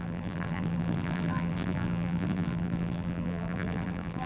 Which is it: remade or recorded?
remade